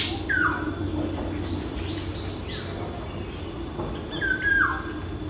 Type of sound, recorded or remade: recorded